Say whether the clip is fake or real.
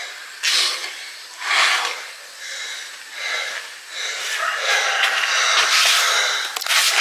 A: real